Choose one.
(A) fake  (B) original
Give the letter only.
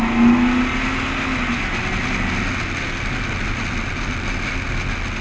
B